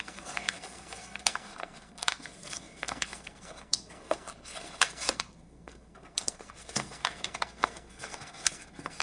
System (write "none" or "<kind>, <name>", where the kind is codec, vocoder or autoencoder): codec, SNAC